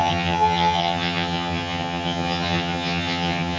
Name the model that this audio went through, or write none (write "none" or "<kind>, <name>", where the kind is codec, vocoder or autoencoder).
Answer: vocoder, HiFi-GAN